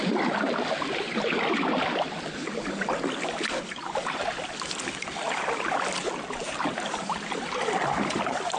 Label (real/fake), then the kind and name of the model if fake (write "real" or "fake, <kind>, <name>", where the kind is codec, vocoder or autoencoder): real